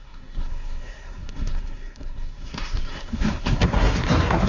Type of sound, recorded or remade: remade